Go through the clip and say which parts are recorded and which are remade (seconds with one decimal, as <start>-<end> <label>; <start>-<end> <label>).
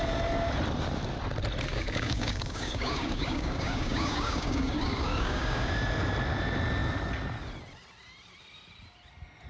0.0-1.7 recorded; 1.7-5.7 remade; 5.7-9.5 recorded